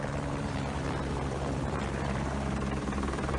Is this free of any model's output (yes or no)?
no